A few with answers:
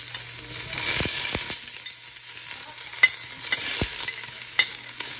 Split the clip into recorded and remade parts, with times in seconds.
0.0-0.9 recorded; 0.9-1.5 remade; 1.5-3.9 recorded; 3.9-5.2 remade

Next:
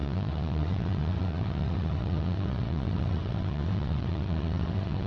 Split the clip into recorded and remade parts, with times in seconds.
0.0-5.1 remade

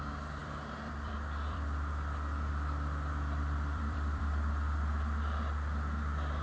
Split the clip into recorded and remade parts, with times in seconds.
0.0-0.4 recorded; 0.4-4.2 remade; 4.2-6.4 recorded

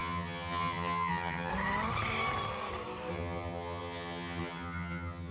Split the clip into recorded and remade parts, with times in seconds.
0.0-1.5 remade; 1.5-3.1 recorded; 3.1-5.3 remade

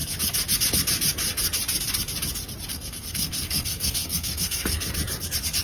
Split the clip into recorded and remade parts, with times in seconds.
0.0-2.7 recorded; 2.7-4.9 remade; 4.9-5.6 recorded